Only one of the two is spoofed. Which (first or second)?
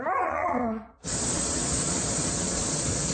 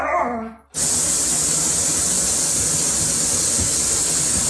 first